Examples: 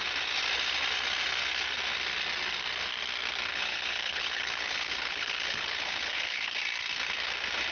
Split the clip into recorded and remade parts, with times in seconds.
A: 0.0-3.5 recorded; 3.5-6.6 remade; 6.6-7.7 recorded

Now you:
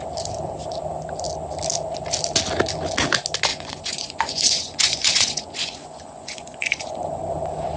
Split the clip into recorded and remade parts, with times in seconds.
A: 0.0-3.5 recorded; 3.5-7.2 remade; 7.2-7.8 recorded

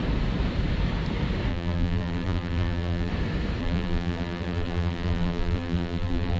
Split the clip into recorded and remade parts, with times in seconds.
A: 0.0-1.5 recorded; 1.5-3.1 remade; 3.1-3.6 recorded; 3.6-6.4 remade

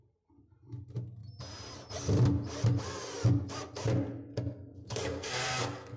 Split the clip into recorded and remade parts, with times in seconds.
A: 0.0-4.8 recorded; 4.8-6.0 remade

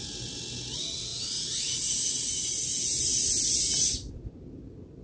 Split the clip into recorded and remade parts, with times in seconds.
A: 0.0-1.1 recorded; 1.1-4.1 remade; 4.1-5.0 recorded

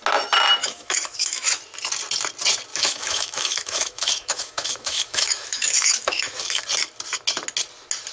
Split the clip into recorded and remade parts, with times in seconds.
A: 0.0-0.6 recorded; 0.6-1.6 remade; 1.6-2.7 recorded; 2.7-6.6 remade; 6.6-8.1 recorded